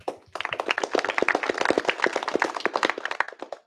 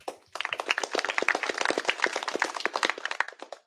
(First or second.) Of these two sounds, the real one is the first